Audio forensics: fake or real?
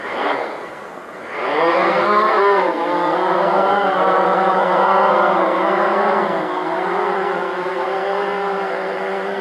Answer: fake